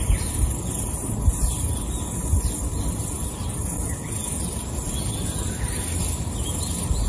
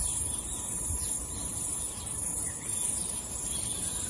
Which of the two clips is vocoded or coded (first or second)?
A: second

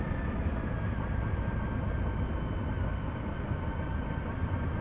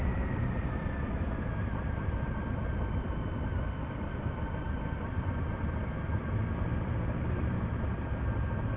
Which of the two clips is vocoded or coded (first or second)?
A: second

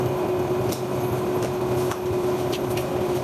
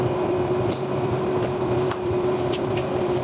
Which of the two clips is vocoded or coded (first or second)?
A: second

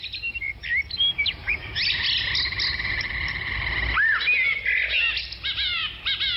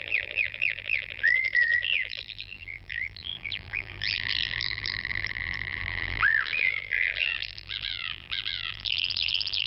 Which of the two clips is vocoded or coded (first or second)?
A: second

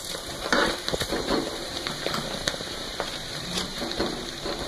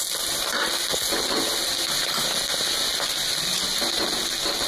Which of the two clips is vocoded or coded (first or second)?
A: first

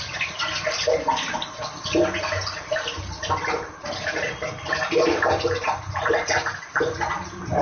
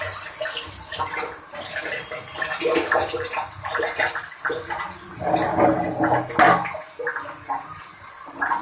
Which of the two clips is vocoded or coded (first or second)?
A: first